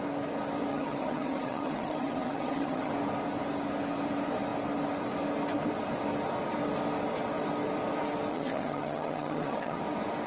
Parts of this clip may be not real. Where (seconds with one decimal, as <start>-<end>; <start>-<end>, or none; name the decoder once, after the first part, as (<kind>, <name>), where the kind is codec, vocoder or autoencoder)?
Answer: 0.7-2.9 (vocoder, HiFi-GAN); 8.3-9.8